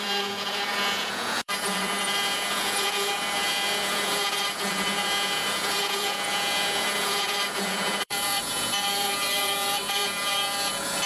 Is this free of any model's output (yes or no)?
no